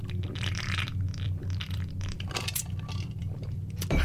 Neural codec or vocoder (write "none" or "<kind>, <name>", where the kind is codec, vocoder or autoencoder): vocoder, BigVGAN v2